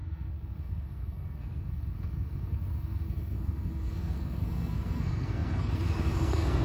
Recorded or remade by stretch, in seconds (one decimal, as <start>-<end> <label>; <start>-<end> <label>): 0.0-6.6 remade